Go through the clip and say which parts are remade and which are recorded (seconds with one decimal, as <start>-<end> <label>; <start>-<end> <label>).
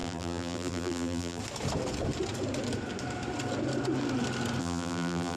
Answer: 0.0-1.4 remade; 1.4-4.6 recorded; 4.6-5.4 remade